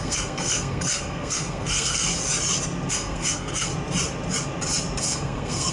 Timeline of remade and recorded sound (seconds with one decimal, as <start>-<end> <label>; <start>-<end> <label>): 0.0-2.1 remade; 2.1-2.9 recorded; 2.9-3.7 remade; 3.7-5.0 recorded; 5.0-5.7 remade

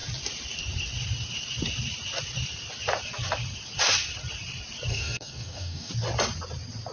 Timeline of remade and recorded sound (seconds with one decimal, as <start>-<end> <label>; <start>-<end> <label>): 0.0-4.9 recorded; 4.9-5.9 remade; 5.9-6.9 recorded

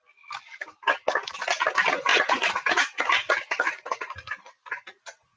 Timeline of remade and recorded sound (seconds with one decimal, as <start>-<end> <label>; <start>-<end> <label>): 0.0-2.1 recorded; 2.1-5.4 remade

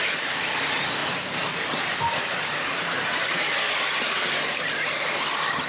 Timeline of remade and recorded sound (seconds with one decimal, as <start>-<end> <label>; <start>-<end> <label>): 0.0-5.7 recorded

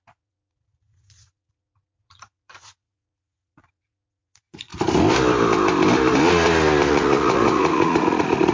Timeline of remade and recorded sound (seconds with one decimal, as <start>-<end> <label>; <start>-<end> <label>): 0.0-4.7 remade; 4.7-6.9 recorded; 6.9-8.5 remade